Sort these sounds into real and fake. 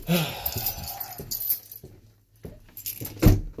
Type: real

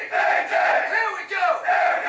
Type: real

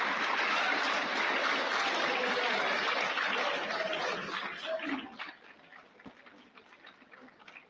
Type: real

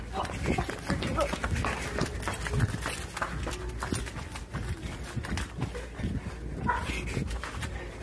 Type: real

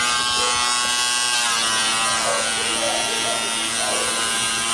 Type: real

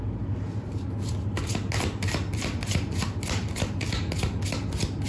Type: real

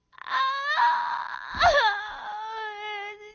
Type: real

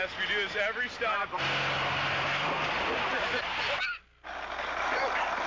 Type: real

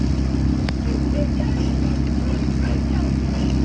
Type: real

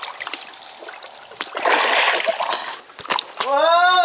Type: real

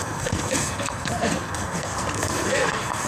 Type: fake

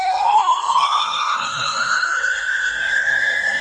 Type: fake